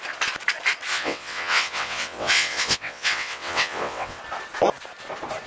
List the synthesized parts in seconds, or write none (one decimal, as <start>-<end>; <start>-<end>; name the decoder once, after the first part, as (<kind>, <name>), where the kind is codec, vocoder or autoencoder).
0.9-4.2 (vocoder, WaveNeXt)